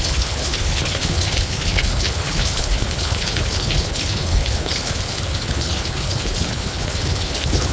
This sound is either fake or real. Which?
fake